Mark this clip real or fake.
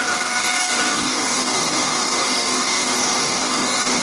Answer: fake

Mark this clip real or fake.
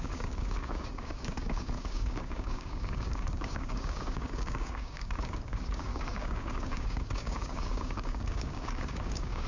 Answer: fake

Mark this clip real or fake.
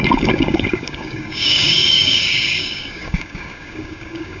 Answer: fake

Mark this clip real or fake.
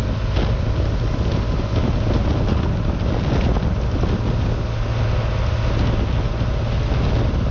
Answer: real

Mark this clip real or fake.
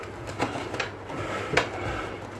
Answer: real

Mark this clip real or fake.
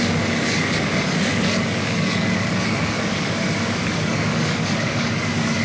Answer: fake